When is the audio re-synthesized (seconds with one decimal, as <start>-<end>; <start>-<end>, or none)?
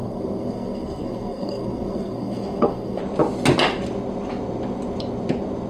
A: 0.0-3.0